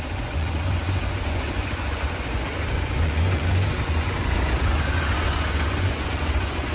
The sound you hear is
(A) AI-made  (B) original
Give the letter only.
A